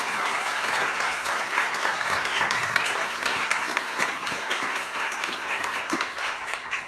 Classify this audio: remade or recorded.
remade